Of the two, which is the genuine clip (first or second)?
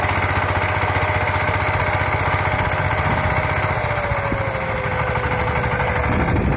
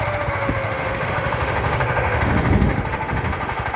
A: first